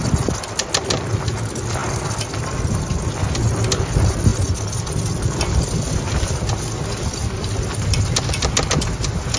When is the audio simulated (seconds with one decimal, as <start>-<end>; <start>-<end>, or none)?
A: none

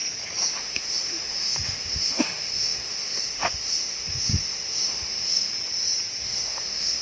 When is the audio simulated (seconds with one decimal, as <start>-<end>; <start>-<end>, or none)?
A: 0.5-5.5; 6.2-7.0

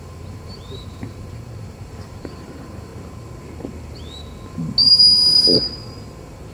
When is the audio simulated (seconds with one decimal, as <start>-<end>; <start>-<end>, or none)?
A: 0.0-2.9